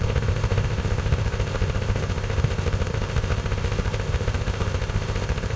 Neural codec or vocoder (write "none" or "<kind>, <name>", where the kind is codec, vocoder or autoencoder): codec, ZipCodec